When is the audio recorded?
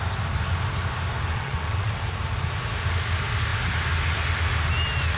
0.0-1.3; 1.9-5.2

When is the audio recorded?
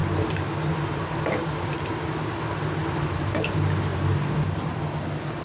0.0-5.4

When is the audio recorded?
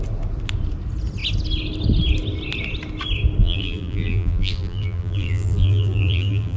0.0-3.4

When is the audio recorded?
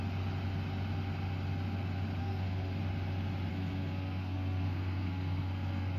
0.0-2.2; 2.8-3.5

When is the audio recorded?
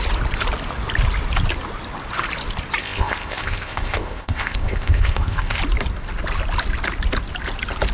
0.0-2.8; 5.6-7.9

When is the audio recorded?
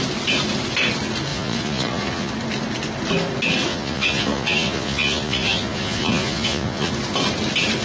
0.0-1.3; 2.3-3.7; 6.9-7.8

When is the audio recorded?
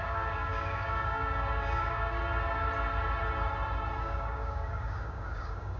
2.2-4.0